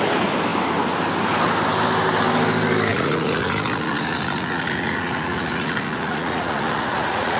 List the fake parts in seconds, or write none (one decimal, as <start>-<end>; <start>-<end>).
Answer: 2.9-7.4